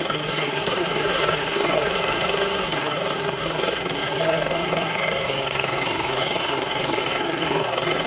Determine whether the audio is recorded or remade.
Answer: remade